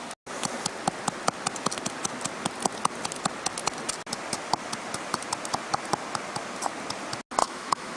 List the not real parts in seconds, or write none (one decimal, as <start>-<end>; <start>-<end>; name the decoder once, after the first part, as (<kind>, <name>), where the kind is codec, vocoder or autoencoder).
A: 7.4-8.0 (autoencoder, DAC-VAE)